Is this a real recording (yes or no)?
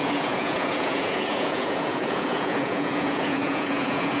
no